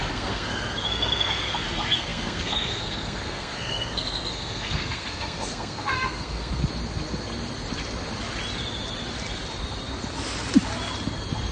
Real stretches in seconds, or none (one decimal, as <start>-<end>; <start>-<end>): 6.6-11.5